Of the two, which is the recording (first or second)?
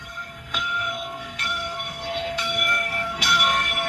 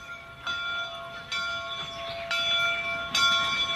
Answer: second